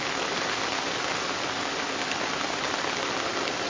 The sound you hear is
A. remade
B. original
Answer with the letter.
B